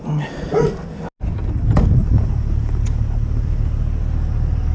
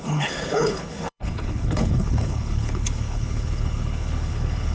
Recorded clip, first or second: first